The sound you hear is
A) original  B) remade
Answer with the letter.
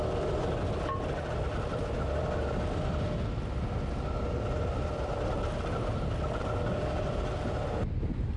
A